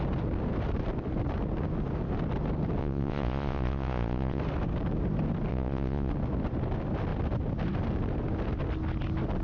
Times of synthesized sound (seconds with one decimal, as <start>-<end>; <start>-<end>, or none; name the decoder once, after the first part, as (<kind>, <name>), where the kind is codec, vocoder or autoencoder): 2.8-4.4 (vocoder, Vocos); 5.5-6.1